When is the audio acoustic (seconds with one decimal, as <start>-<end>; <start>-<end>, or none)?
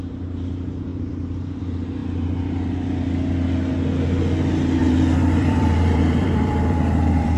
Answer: 0.0-0.9; 1.6-4.8